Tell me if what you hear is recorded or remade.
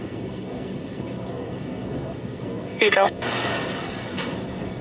remade